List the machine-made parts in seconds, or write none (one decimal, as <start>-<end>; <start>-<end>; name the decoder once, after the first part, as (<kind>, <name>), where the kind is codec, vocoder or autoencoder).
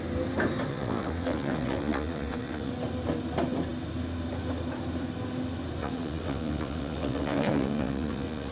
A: 0.7-2.7 (vocoder, WaveNeXt); 5.8-8.5